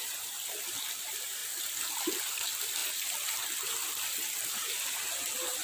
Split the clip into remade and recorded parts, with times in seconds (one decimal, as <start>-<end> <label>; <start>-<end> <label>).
0.0-5.6 recorded